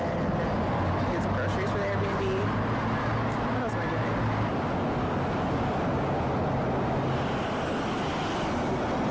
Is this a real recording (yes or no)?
yes